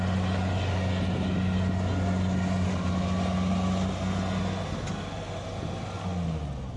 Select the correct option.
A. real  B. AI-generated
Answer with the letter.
A